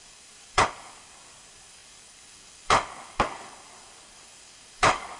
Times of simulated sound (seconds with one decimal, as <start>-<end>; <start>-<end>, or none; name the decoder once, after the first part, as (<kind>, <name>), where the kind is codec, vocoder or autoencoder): 0.0-5.2 (codec, DAC)